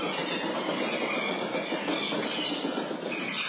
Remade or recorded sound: recorded